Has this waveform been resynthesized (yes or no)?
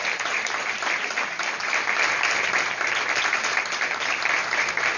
no